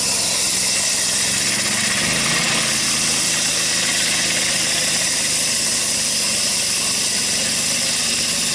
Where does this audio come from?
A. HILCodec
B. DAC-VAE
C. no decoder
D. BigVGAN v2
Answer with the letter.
C